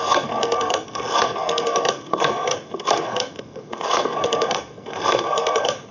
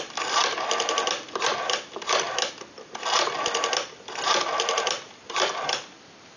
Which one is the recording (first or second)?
second